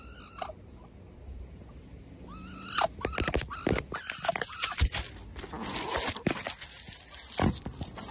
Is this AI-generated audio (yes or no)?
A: no